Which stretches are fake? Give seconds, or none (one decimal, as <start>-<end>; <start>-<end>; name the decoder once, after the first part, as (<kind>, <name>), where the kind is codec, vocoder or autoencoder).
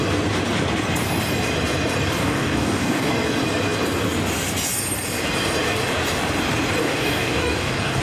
2.2-3.1 (codec, DAC); 6.8-8.0